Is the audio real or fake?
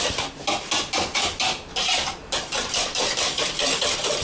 fake